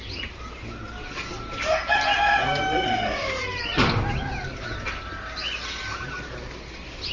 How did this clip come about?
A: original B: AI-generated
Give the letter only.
A